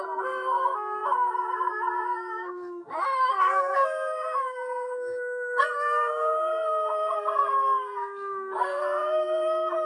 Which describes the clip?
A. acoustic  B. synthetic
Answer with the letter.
B